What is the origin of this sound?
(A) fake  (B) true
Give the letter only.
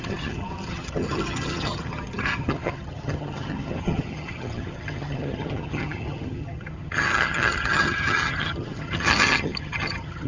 A